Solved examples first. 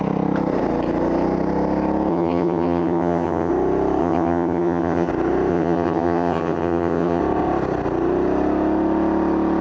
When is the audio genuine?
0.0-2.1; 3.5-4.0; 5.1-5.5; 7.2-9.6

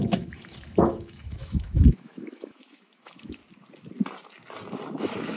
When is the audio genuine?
3.4-5.0